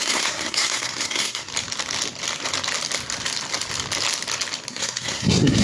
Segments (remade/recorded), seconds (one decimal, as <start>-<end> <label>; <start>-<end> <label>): 0.0-1.5 remade; 1.5-4.7 recorded; 4.7-5.6 remade

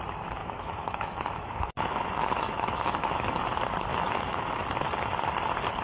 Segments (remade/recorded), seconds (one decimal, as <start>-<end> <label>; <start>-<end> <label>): 0.0-0.4 recorded; 0.4-3.4 remade; 3.4-3.9 recorded; 3.9-4.5 remade; 4.5-5.8 recorded

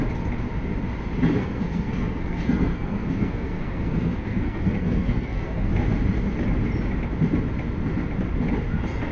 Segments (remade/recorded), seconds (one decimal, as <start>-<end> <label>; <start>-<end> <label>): 0.0-1.4 recorded; 1.4-5.7 remade; 5.7-9.1 recorded

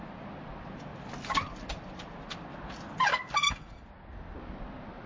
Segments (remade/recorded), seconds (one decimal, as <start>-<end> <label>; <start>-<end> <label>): 0.0-5.1 recorded